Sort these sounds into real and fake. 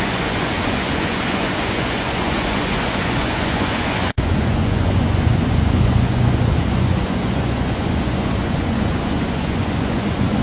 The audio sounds fake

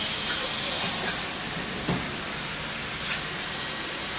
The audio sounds real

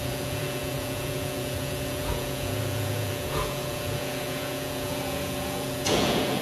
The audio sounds fake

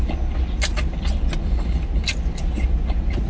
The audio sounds real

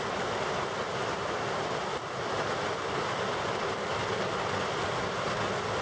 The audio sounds real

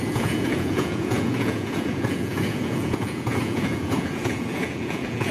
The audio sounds fake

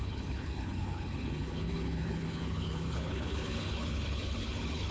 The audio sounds fake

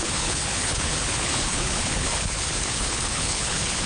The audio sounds fake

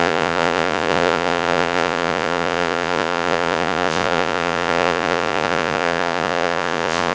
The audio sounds fake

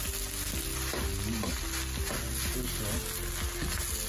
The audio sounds real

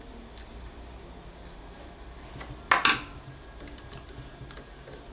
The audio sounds real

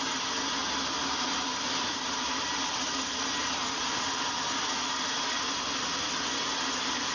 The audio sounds real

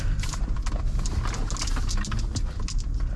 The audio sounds real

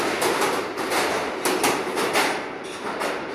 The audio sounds real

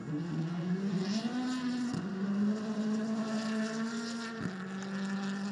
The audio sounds real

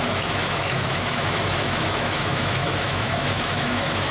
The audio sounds fake